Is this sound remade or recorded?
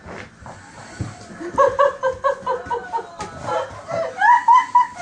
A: recorded